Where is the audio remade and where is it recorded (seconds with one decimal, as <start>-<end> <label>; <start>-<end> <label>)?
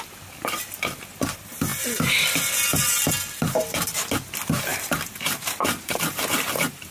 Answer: 0.0-4.7 recorded; 4.7-6.5 remade; 6.5-6.9 recorded